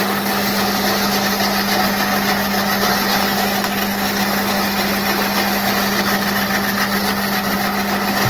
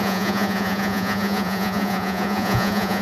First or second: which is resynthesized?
second